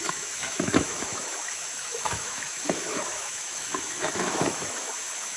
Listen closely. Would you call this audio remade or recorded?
remade